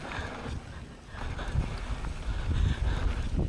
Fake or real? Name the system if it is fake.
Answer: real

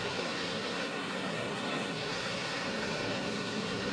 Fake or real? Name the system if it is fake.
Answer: fake, codec, SNAC